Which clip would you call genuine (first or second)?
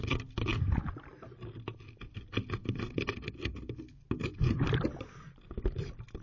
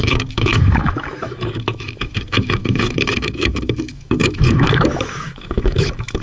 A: first